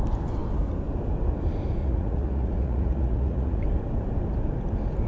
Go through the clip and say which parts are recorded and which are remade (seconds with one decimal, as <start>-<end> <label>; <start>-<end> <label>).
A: 0.0-1.8 recorded; 1.8-3.6 remade; 3.6-5.1 recorded